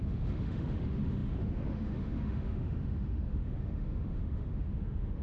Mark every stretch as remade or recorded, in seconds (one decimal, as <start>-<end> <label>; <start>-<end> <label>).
0.0-5.2 remade